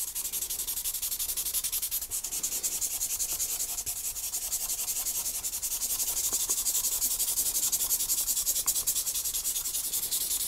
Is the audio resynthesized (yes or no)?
no